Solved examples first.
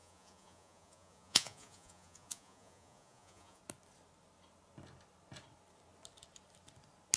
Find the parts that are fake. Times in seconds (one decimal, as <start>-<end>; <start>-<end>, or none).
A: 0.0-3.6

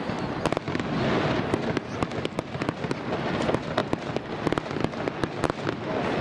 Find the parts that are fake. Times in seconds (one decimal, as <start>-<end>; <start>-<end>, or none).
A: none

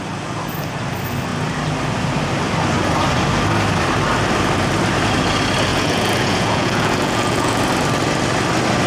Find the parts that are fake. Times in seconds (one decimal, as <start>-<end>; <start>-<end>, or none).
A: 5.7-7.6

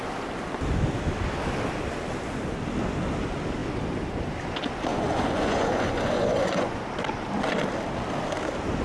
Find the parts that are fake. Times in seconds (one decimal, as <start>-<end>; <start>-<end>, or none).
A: 4.9-6.8

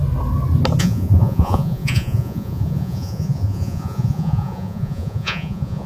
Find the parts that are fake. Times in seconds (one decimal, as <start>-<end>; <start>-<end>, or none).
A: 0.8-5.9

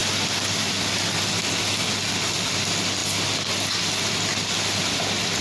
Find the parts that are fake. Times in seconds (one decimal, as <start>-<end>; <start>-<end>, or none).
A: none

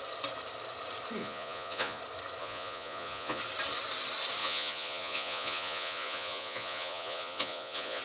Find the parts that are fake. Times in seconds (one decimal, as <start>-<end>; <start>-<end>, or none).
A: 1.2-2.0; 2.4-3.4; 4.4-8.0